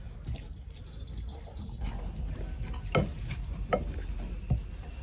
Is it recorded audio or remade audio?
recorded